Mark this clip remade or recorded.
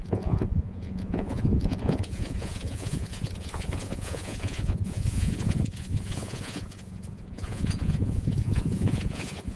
remade